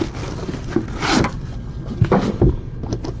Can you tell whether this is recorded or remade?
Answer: remade